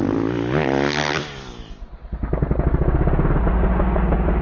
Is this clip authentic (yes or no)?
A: yes